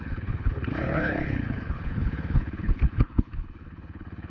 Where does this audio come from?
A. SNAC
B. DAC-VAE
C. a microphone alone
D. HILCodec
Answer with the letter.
D